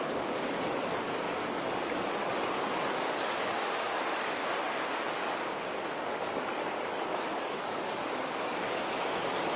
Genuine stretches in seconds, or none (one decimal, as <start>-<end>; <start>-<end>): 4.4-5.1